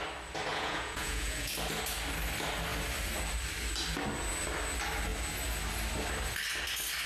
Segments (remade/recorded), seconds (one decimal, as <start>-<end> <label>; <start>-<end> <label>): 0.0-0.5 recorded; 0.5-1.5 remade; 1.5-7.1 recorded